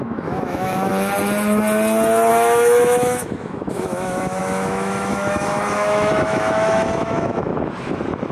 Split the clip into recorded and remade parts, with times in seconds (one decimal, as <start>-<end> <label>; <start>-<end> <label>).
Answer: 0.0-0.9 remade; 0.9-2.3 recorded; 2.3-7.5 remade; 7.5-8.3 recorded